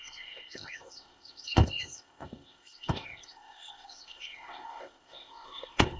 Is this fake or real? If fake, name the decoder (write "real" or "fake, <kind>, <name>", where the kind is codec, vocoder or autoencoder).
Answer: fake, codec, ZipCodec